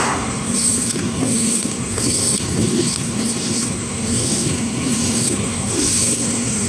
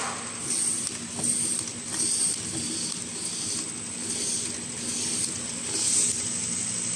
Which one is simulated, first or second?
first